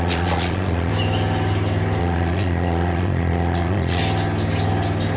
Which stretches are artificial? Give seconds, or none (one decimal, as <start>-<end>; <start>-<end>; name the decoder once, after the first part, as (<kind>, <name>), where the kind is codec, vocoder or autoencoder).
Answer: 0.0-0.9 (vocoder, Vocos); 2.0-4.0